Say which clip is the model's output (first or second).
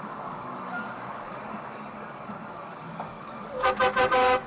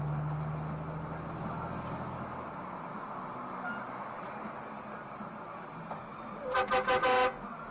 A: first